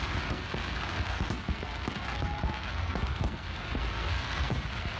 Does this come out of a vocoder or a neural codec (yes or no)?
yes